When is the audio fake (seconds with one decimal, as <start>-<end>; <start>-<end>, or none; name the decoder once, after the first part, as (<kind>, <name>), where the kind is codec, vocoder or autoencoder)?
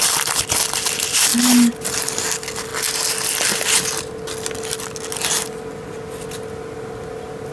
none